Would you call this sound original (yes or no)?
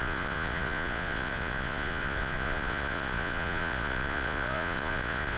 no